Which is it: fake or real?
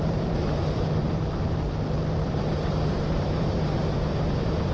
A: fake